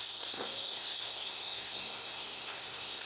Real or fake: fake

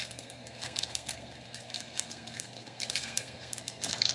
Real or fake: fake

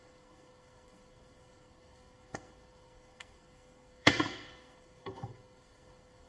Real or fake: fake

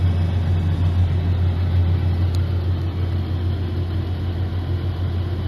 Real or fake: real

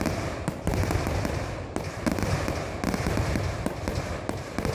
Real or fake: real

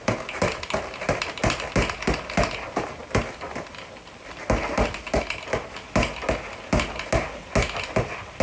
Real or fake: real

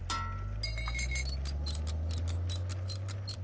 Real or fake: real